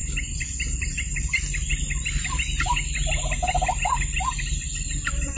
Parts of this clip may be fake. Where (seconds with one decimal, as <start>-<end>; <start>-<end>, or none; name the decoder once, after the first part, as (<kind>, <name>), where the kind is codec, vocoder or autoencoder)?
none